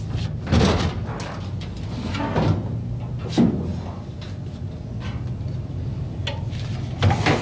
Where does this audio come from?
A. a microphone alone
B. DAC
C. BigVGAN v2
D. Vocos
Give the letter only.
A